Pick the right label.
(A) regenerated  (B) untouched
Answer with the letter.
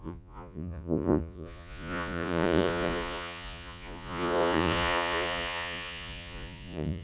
A